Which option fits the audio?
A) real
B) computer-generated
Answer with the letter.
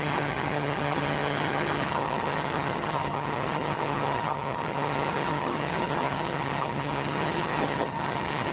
B